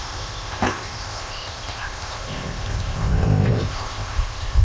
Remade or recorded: remade